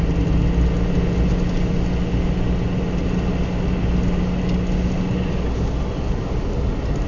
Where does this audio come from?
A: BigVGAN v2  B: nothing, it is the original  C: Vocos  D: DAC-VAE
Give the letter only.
B